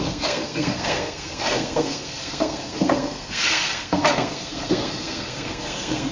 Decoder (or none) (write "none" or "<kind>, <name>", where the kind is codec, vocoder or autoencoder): codec, SNAC